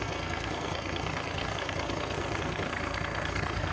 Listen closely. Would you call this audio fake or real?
fake